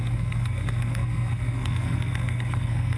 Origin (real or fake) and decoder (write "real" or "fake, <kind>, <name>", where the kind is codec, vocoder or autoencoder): fake, codec, SNAC